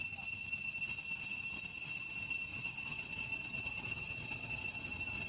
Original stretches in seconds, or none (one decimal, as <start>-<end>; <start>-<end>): 0.0-2.5; 4.6-5.3